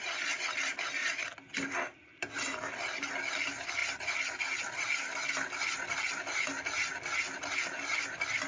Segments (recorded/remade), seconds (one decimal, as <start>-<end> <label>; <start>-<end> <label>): 0.0-8.5 recorded